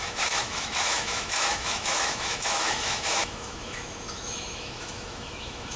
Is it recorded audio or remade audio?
remade